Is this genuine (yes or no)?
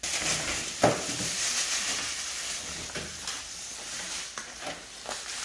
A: yes